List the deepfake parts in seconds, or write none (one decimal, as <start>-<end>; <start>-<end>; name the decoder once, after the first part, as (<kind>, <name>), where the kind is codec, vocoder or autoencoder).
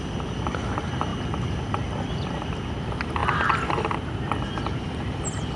none